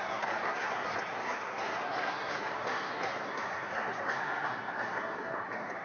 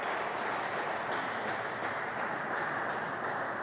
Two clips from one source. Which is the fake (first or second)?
first